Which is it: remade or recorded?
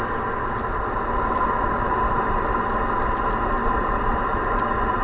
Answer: recorded